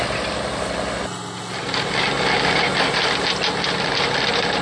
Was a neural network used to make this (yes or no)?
no